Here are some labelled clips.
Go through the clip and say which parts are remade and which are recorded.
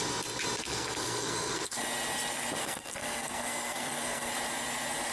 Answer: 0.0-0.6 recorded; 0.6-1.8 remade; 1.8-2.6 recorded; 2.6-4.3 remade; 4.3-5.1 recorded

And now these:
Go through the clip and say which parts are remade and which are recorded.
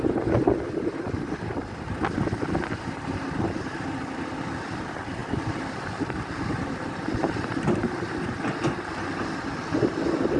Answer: 0.0-5.2 recorded; 5.2-7.1 remade; 7.1-10.4 recorded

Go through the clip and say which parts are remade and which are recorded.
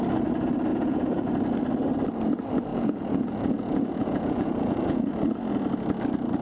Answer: 0.0-0.7 recorded; 0.7-1.3 remade; 1.3-2.7 recorded; 2.7-5.1 remade; 5.1-6.4 recorded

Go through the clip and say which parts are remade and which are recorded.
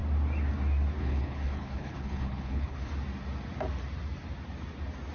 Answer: 0.0-1.0 recorded; 1.0-2.9 remade; 2.9-5.1 recorded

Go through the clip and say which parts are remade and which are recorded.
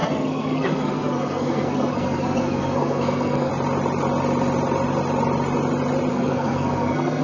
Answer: 0.0-3.5 remade; 3.5-6.1 recorded; 6.1-7.2 remade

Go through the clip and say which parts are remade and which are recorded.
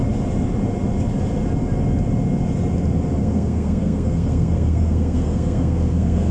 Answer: 0.0-3.2 recorded; 3.2-6.3 remade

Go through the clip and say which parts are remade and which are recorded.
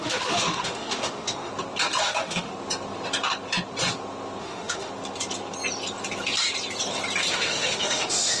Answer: 0.0-1.5 remade; 1.5-2.0 recorded; 2.0-2.5 remade; 2.5-4.4 recorded; 4.4-4.9 remade; 4.9-7.3 recorded; 7.3-8.4 remade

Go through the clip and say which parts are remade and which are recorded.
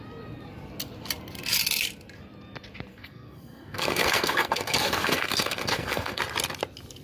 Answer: 0.0-2.9 recorded; 2.9-6.2 remade; 6.2-7.0 recorded